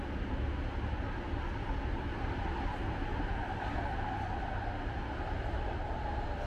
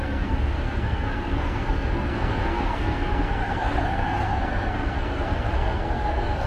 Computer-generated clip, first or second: second